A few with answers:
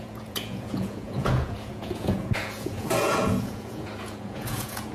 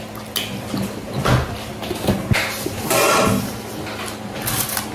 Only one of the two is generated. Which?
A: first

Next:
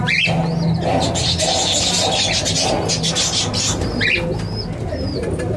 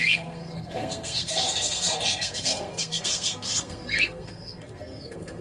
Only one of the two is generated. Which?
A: second